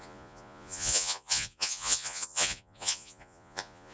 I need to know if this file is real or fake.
fake